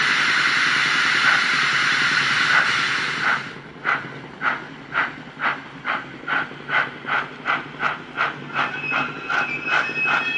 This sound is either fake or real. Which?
real